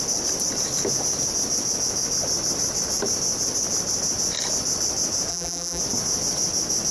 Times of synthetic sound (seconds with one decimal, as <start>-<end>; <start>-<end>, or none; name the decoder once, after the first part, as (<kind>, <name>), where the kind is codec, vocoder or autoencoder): 5.3-5.8 (vocoder, BigVGAN v2)

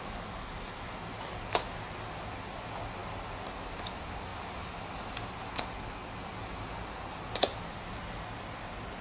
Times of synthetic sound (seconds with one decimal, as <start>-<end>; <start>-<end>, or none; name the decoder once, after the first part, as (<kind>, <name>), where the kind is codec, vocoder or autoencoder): none